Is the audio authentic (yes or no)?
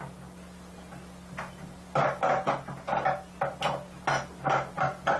yes